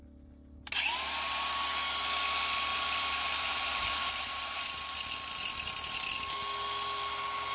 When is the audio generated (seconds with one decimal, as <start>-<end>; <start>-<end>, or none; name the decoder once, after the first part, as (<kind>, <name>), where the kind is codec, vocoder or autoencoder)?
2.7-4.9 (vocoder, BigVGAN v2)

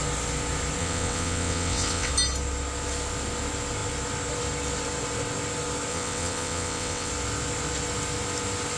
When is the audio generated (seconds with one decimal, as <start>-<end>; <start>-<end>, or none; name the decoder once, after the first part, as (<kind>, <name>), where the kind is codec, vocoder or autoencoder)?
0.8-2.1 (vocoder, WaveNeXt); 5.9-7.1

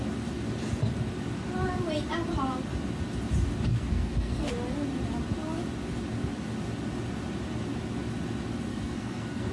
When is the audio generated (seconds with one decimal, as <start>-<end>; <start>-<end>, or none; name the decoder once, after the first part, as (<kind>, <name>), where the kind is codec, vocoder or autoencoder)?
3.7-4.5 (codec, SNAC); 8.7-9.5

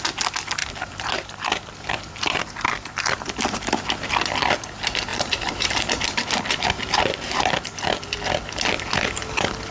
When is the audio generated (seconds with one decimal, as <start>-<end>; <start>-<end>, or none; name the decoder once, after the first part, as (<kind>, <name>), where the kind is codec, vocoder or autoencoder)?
0.6-4.1 (vocoder, BigVGAN v2); 5.1-5.8

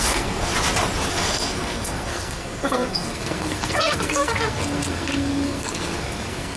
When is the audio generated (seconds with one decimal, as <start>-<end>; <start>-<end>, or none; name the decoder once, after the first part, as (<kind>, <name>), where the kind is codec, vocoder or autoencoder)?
0.0-0.5 (codec, SNAC); 1.1-6.6

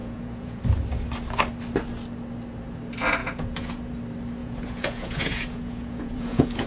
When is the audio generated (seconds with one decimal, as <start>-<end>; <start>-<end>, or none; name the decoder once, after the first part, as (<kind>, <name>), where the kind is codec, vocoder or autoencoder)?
0.0-0.6 (vocoder, Vocos); 3.2-3.9; 4.4-6.7